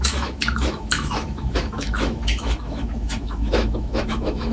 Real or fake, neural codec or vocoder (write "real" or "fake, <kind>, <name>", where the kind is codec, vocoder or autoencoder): fake, autoencoder, DAC-VAE